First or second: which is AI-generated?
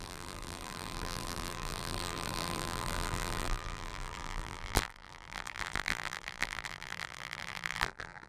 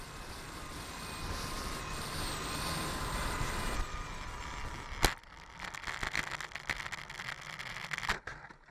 first